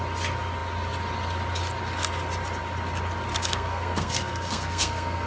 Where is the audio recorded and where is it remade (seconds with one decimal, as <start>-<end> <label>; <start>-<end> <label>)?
0.0-3.3 recorded; 3.3-5.3 remade